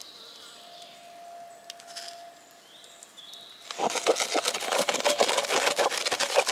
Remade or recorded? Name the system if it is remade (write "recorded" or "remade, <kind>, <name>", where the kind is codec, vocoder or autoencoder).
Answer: recorded